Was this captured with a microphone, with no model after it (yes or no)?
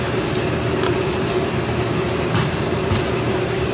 yes